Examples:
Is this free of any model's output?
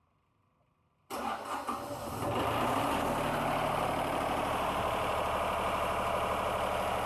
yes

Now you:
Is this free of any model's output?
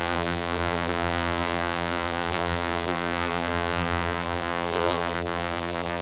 no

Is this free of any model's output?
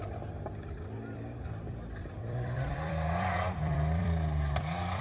no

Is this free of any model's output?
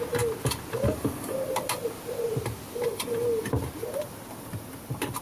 yes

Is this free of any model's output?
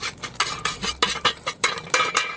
no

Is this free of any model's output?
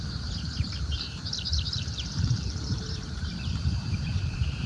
no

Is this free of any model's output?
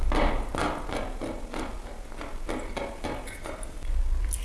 yes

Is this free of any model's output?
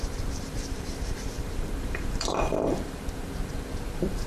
no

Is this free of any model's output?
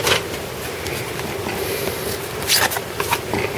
yes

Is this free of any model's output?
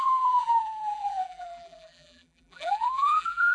no